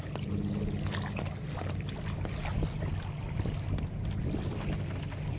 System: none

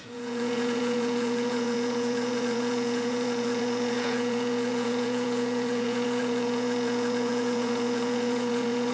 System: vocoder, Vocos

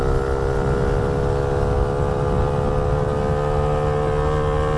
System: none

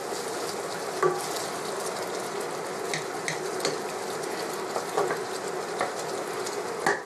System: none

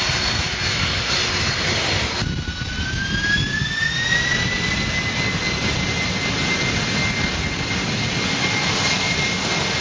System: none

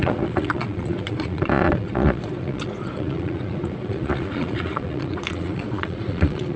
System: vocoder, Vocos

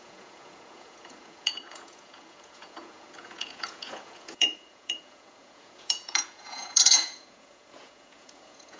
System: vocoder, Vocos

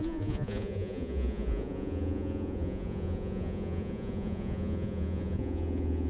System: vocoder, Vocos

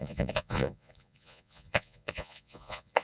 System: vocoder, Vocos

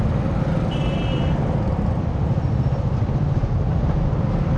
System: none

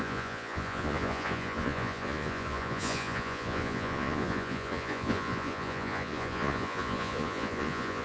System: vocoder, Vocos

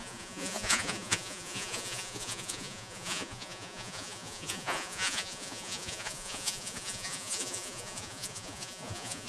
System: vocoder, Vocos